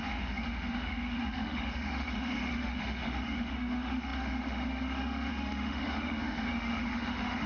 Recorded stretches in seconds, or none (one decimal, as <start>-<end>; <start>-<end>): none